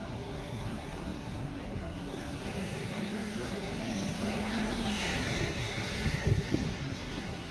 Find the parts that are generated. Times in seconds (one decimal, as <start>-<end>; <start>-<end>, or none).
0.0-7.5